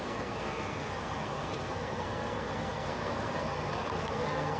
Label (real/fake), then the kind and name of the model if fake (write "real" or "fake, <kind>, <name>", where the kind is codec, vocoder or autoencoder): fake, codec, SNAC